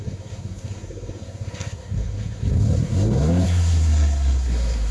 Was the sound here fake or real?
fake